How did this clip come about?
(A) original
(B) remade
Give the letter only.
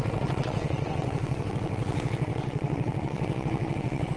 B